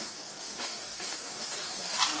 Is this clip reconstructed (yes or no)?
yes